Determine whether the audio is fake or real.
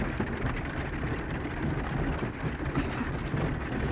real